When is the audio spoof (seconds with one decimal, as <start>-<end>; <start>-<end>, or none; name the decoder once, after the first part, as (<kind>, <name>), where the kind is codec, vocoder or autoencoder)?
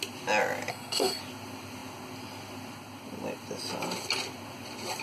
0.7-1.2 (codec, SNAC)